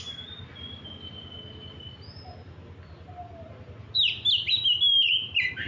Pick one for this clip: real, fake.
real